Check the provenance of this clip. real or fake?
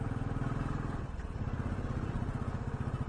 real